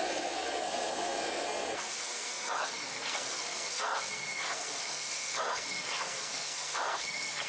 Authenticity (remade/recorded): remade